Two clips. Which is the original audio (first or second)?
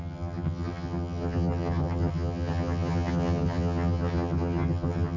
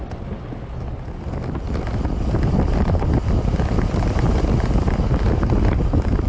second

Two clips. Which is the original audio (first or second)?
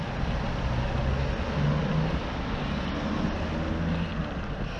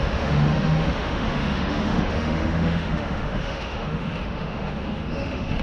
first